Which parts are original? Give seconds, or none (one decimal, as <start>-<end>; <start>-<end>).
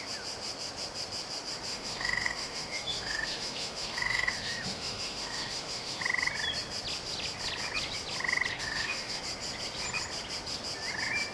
0.0-1.7; 6.0-8.5; 9.2-11.3